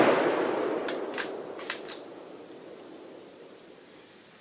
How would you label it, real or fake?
real